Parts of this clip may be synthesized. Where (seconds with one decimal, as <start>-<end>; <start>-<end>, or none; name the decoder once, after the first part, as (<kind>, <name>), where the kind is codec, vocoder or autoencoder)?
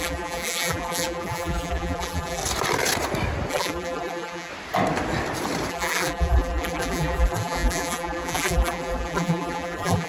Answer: 0.0-2.4 (vocoder, BigVGAN v2); 3.5-4.5; 5.7-10.1